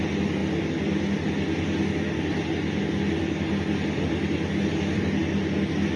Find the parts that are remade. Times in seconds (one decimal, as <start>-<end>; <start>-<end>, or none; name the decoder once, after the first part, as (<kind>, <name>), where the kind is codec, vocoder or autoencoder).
none